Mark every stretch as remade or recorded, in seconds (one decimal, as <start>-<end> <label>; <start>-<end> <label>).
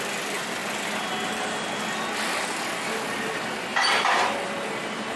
0.0-5.2 recorded